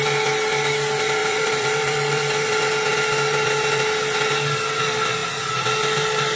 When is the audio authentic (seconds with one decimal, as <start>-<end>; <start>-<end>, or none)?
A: 0.0-1.2; 2.5-6.4